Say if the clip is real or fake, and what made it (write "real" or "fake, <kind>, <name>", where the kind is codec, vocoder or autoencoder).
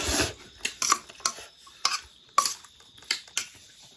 real